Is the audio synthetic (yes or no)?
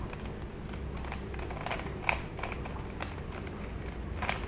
no